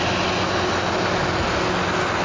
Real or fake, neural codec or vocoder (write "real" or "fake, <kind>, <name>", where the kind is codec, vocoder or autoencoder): real